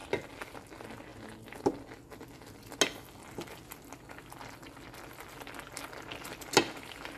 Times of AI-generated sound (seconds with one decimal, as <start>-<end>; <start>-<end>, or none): none